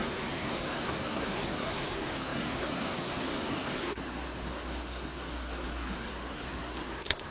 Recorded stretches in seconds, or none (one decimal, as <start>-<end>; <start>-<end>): none